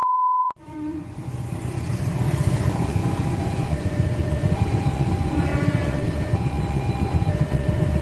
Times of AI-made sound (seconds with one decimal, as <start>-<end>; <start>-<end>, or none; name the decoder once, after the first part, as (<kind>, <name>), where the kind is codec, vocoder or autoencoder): 0.0-8.0 (vocoder, Vocos)